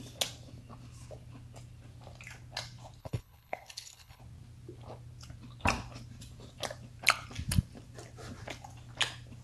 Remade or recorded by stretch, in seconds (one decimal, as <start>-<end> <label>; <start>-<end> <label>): 0.0-3.0 recorded; 3.0-4.2 remade; 4.2-9.4 recorded